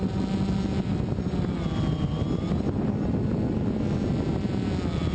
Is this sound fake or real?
real